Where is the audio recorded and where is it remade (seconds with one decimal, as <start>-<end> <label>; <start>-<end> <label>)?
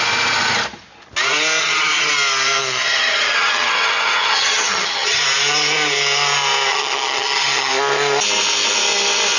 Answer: 0.0-1.6 recorded; 1.6-2.1 remade; 2.1-2.6 recorded; 2.6-5.2 remade; 5.2-6.7 recorded; 6.7-7.7 remade; 7.7-9.4 recorded